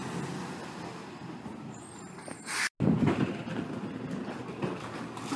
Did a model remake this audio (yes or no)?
no